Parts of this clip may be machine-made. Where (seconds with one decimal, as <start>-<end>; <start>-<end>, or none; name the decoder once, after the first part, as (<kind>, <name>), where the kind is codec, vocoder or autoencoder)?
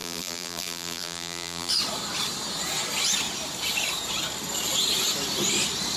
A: 0.0-1.7 (vocoder, BigVGAN v2)